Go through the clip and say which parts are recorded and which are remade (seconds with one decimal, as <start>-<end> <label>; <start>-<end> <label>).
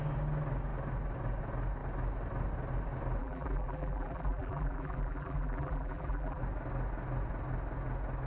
0.0-3.2 recorded; 3.2-6.4 remade; 6.4-8.3 recorded